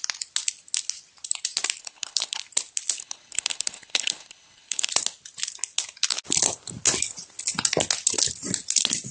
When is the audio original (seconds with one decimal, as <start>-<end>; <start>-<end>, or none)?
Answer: 0.0-1.8; 2.4-3.0; 4.9-9.1

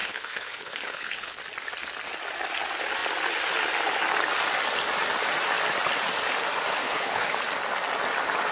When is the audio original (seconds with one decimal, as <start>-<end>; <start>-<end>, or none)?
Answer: 1.4-6.8; 7.3-8.5